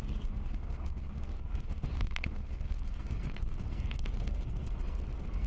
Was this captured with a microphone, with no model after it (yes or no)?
no